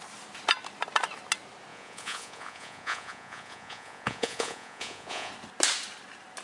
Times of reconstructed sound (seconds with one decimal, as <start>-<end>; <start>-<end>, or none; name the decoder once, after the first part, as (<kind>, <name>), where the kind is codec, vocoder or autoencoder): 1.7-5.3 (vocoder, Vocos)